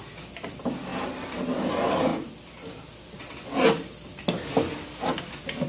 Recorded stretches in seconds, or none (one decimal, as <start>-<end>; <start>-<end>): 0.0-5.7